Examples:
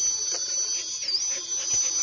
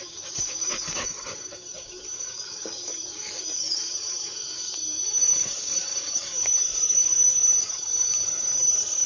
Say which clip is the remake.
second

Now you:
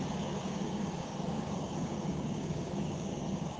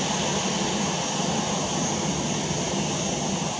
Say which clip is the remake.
first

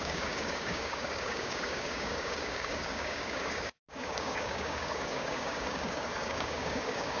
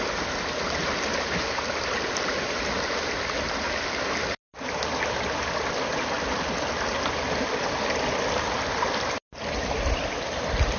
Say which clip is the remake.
first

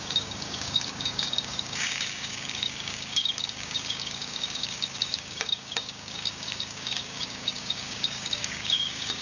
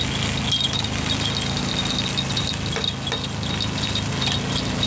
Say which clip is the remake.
first